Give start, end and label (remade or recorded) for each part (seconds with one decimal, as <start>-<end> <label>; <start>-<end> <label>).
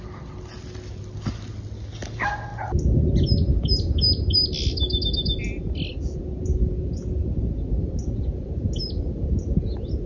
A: 0.0-10.1 recorded